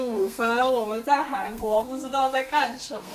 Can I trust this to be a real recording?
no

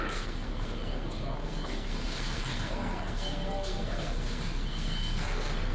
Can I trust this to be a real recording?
no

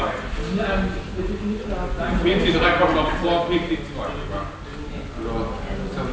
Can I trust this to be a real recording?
yes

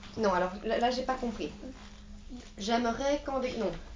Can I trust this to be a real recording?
yes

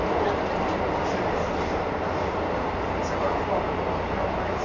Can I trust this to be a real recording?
yes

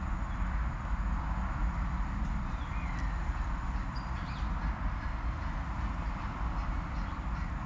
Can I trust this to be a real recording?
yes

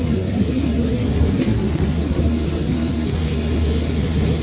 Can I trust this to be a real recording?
no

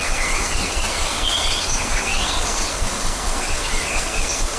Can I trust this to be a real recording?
no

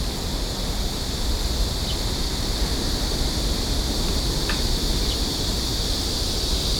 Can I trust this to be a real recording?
yes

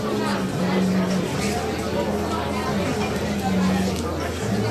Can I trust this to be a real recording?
yes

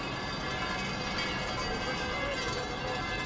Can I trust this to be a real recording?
yes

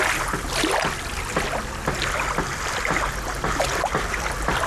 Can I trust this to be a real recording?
yes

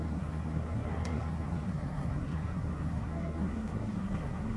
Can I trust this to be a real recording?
no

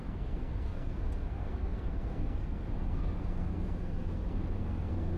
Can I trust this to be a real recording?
no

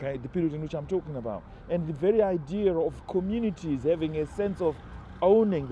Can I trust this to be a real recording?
yes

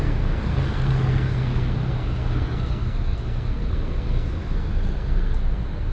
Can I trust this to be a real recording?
no